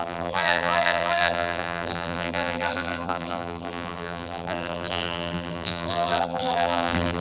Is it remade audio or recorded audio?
remade